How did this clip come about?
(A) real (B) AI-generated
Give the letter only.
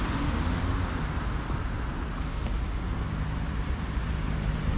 A